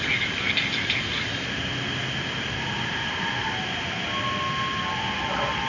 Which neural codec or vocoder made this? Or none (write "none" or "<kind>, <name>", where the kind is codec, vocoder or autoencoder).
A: none